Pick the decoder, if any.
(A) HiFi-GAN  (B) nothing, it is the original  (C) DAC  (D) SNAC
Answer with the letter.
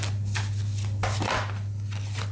B